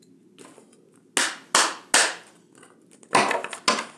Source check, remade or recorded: recorded